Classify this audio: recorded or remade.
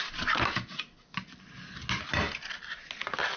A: recorded